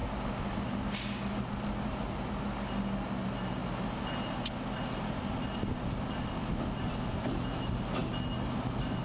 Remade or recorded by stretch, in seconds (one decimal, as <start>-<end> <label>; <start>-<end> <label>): 0.0-9.0 recorded